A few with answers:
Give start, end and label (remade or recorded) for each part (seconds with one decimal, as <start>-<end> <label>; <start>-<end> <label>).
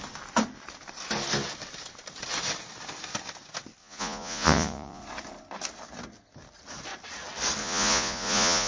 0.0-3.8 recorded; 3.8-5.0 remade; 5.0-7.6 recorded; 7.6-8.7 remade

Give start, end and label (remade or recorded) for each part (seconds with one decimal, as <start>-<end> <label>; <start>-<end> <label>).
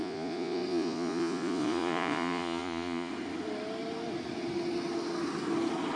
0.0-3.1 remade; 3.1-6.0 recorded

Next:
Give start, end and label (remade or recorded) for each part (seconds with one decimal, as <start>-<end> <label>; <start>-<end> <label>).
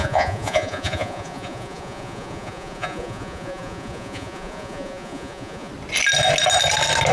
0.0-5.7 remade; 5.7-7.1 recorded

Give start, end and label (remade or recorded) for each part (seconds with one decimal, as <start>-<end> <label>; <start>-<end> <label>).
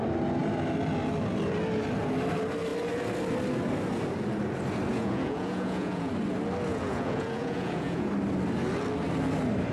0.0-4.9 recorded; 4.9-6.1 remade; 6.1-6.7 recorded; 6.7-8.1 remade; 8.1-9.7 recorded